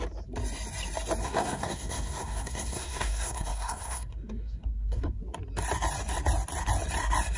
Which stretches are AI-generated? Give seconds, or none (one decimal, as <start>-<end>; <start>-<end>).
1.2-5.2